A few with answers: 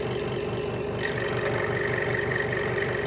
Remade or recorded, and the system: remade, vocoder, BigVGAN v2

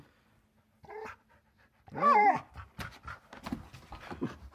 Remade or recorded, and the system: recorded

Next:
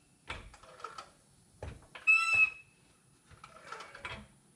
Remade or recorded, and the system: recorded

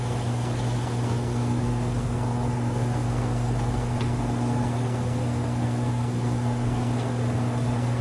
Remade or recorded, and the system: remade, codec, SNAC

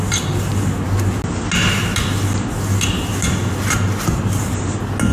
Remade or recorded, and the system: recorded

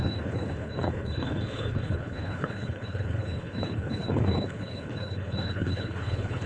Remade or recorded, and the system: remade, codec, HILCodec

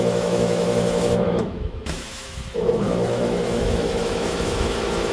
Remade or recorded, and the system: remade, autoencoder, DAC-VAE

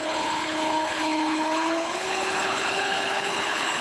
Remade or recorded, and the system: remade, codec, HILCodec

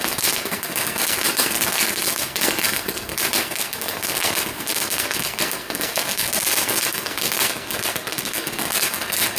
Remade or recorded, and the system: remade, codec, SNAC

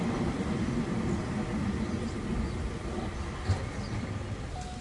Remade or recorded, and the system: recorded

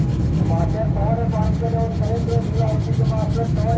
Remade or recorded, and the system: recorded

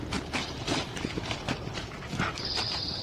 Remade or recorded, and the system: remade, vocoder, BigVGAN v2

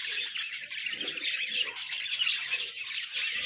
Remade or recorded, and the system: recorded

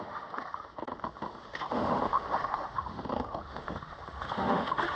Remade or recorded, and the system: remade, autoencoder, DAC-VAE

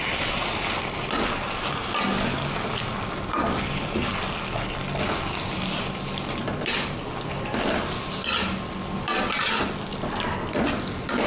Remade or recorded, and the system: recorded